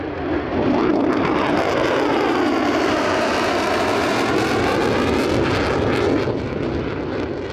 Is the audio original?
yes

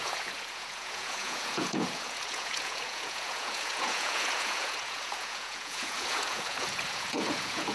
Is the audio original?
no